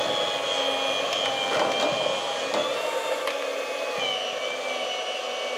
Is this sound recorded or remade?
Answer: recorded